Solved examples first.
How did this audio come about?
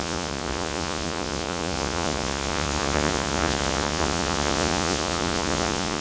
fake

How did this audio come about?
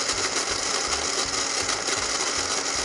real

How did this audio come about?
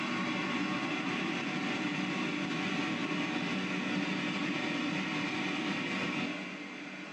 real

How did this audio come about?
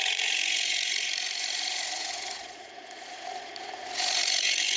fake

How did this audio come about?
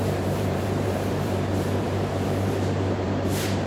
fake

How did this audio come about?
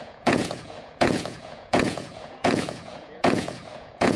fake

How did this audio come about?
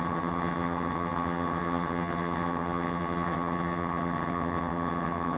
fake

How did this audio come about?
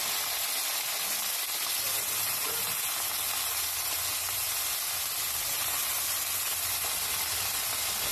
real